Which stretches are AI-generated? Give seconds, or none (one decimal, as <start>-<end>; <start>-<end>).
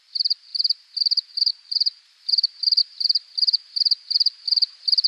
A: 0.0-5.1